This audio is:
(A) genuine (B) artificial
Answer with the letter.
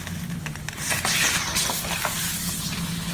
A